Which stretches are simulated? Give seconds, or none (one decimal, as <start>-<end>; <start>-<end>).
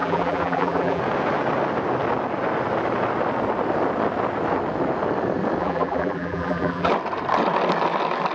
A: 0.0-1.0; 5.6-6.9